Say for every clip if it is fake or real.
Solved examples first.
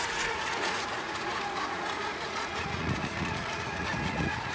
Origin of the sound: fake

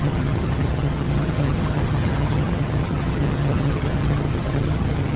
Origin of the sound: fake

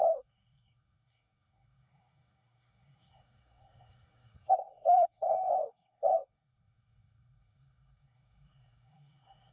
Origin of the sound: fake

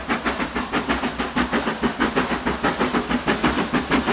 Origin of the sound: real